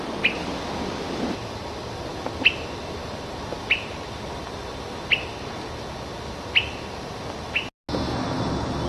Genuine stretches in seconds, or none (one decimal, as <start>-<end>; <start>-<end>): 0.0-8.9